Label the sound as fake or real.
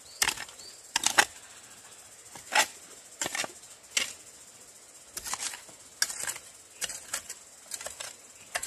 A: real